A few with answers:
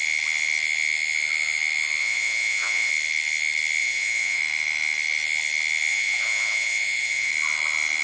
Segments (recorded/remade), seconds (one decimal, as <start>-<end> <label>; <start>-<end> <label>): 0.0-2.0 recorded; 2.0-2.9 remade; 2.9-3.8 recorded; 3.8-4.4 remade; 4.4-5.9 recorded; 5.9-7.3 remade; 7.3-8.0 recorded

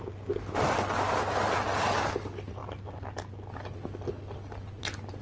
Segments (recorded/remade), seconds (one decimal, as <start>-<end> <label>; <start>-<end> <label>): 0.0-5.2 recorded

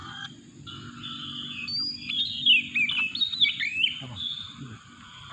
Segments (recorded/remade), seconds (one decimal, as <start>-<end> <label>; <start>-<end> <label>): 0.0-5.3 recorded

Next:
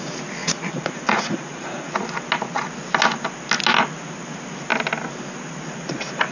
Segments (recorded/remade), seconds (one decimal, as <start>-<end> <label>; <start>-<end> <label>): 0.0-0.4 recorded; 0.4-1.9 remade; 1.9-6.3 recorded

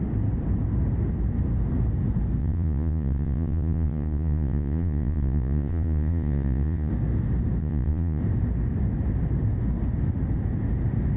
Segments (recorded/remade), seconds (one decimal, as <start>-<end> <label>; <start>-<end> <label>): 0.0-2.4 recorded; 2.4-6.9 remade; 6.9-7.6 recorded; 7.6-8.2 remade; 8.2-11.2 recorded

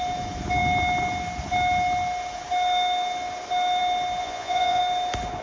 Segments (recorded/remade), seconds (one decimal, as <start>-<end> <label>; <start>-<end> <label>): 0.0-4.2 recorded; 4.2-4.8 remade; 4.8-5.4 recorded